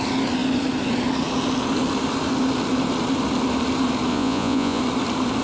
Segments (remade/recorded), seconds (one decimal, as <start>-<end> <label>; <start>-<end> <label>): 0.0-4.1 recorded; 4.1-4.8 remade; 4.8-5.4 recorded